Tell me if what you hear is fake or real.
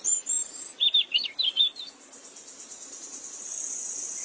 fake